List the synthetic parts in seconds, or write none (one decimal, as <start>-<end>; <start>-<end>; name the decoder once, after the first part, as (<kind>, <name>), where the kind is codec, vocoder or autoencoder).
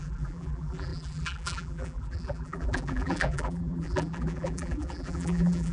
0.0-5.7 (vocoder, BigVGAN v2)